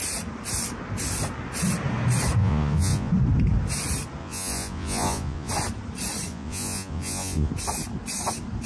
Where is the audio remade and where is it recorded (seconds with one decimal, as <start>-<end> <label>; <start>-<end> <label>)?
0.0-2.4 recorded; 2.4-3.1 remade; 3.1-4.2 recorded; 4.2-5.5 remade; 5.5-6.3 recorded; 6.3-7.5 remade; 7.5-8.7 recorded